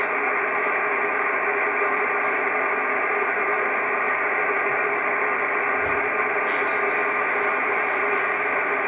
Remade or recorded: recorded